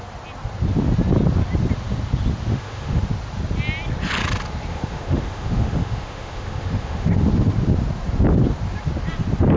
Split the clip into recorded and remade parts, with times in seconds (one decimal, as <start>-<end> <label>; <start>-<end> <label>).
0.0-2.5 recorded; 2.5-3.0 remade; 3.0-4.7 recorded; 4.7-7.1 remade; 7.1-9.6 recorded

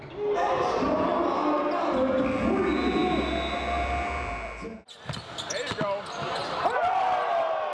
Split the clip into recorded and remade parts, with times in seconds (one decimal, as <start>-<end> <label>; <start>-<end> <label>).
0.0-7.7 recorded

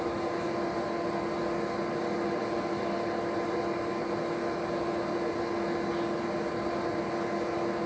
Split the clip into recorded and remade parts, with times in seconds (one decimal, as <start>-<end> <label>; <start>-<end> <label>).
0.0-7.9 recorded

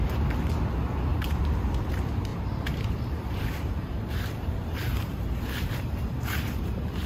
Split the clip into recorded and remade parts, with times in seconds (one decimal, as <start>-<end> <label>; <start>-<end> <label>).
0.0-1.1 recorded; 1.1-1.9 remade; 1.9-2.3 recorded; 2.3-6.6 remade; 6.6-7.1 recorded